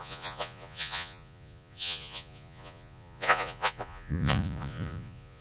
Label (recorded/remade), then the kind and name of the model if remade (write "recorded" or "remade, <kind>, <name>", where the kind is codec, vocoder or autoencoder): remade, vocoder, Vocos